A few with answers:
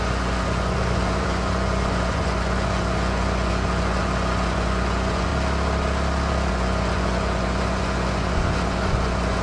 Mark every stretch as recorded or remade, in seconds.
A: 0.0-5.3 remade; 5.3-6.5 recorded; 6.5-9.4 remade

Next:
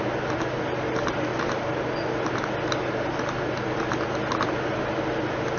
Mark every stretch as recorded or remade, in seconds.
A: 0.0-5.6 recorded

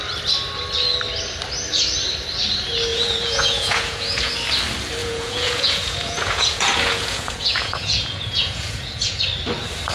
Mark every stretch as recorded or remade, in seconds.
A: 0.0-2.9 recorded; 2.9-4.3 remade; 4.3-5.0 recorded; 5.0-9.2 remade; 9.2-9.9 recorded

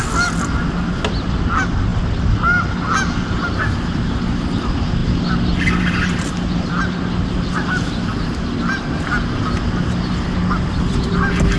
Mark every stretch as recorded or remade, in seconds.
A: 0.0-11.6 recorded

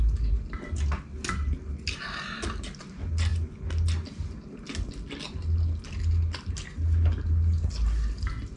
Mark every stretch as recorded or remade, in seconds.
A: 0.0-8.6 recorded

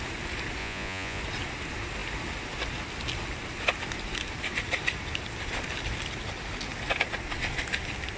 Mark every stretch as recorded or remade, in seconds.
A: 0.0-0.6 recorded; 0.6-1.2 remade; 1.2-8.2 recorded